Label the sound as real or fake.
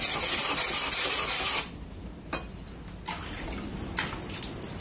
real